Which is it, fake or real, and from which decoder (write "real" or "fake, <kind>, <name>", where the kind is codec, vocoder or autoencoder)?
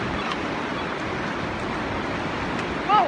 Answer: real